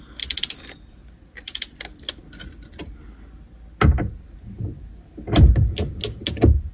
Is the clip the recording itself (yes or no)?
yes